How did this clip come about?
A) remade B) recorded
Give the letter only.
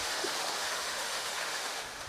A